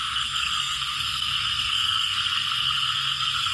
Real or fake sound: fake